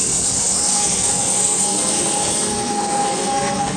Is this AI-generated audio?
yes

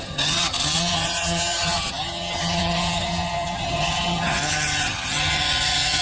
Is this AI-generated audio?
yes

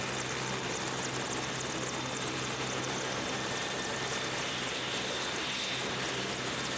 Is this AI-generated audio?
no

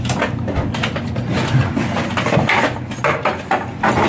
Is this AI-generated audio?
no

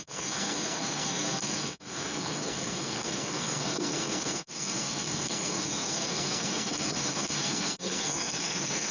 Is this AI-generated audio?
yes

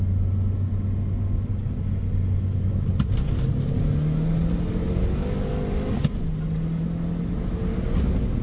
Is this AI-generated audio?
no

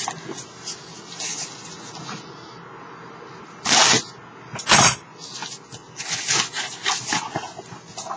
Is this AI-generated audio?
no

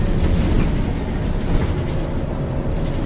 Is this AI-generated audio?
no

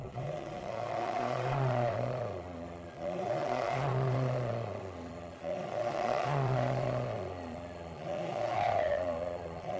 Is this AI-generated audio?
yes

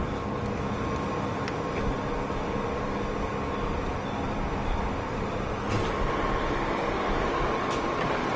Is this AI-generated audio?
no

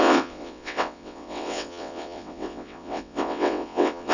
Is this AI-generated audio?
yes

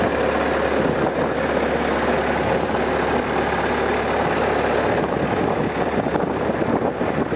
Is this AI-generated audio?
no